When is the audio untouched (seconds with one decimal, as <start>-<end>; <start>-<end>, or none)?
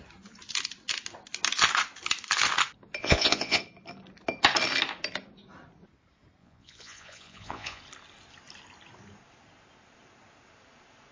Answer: 0.0-3.0; 3.6-6.4; 7.8-11.1